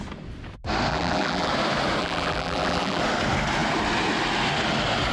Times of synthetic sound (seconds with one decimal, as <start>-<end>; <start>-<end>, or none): 0.9-1.5; 2.0-3.0